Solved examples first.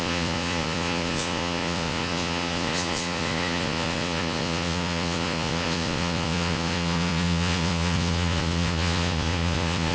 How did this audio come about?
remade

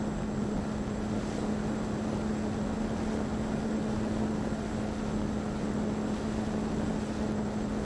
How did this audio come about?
recorded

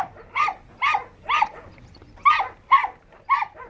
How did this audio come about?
recorded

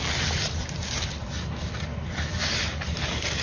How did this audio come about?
recorded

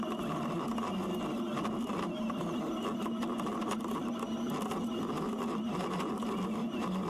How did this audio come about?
recorded